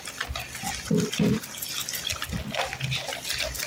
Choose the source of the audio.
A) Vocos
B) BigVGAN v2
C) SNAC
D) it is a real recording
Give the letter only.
D